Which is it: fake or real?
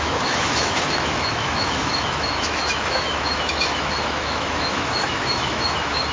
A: fake